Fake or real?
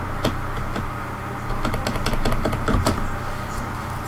real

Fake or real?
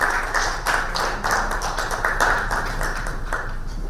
fake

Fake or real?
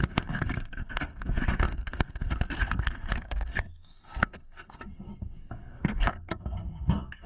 fake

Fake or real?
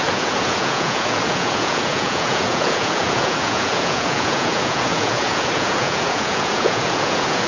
fake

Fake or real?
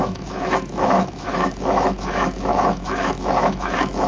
fake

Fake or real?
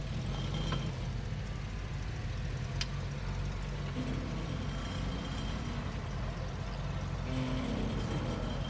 real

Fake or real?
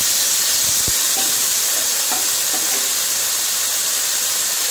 real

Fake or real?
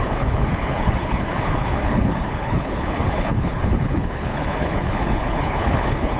fake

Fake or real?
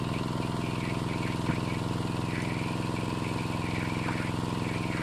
real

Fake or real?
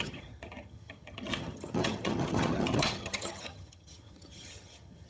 fake